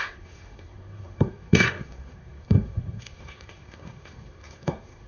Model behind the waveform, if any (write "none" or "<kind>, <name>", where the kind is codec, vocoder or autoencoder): codec, SNAC